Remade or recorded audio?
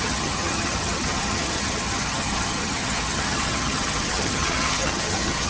remade